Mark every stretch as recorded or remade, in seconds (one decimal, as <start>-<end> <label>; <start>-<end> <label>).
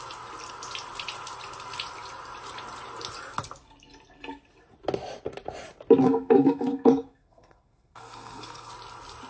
0.0-6.0 recorded; 6.0-8.7 remade; 8.7-9.3 recorded